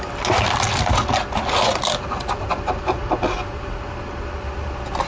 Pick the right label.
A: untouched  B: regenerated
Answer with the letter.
A